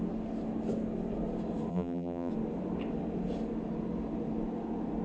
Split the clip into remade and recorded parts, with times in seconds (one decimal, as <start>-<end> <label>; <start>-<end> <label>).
0.0-1.7 recorded; 1.7-2.3 remade; 2.3-5.0 recorded